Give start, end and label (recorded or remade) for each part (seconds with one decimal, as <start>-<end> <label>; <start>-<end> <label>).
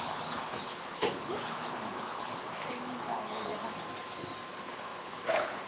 0.0-3.5 remade; 3.5-4.5 recorded; 4.5-5.7 remade